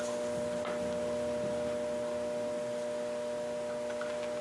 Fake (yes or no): no